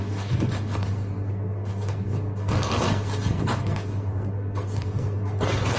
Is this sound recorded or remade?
remade